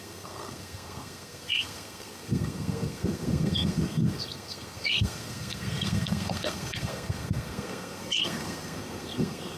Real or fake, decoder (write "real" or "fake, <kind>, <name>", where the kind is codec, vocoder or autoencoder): fake, codec, SNAC